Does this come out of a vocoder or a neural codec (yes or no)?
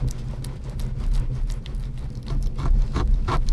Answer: no